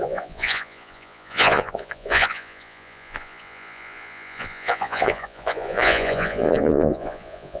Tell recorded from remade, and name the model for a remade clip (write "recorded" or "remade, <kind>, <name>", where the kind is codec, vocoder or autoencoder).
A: remade, vocoder, Vocos